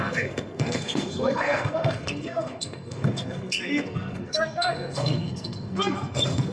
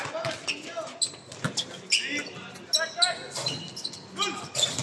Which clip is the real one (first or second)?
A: second